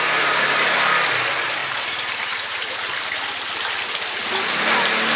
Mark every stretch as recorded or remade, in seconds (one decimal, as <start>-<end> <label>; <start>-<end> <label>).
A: 0.0-5.2 recorded